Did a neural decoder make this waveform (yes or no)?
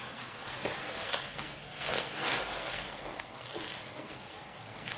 yes